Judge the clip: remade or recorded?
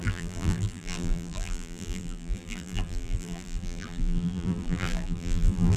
remade